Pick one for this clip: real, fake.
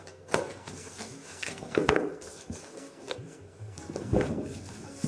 fake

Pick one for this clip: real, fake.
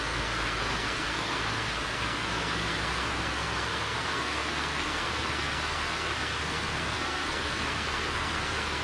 fake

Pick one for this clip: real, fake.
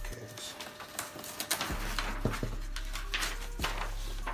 real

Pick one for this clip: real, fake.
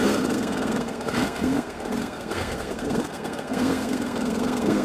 fake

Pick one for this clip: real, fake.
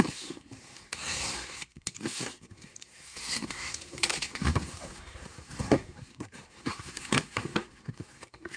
fake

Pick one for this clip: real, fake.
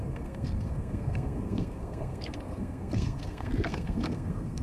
fake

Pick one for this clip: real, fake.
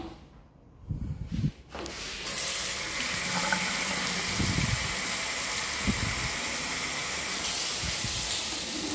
real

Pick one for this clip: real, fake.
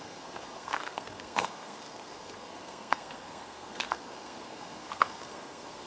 fake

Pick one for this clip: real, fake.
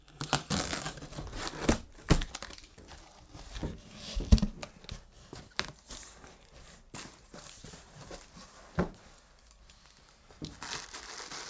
real